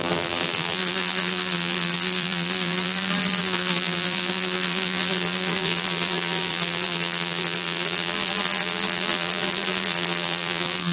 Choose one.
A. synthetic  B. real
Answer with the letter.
A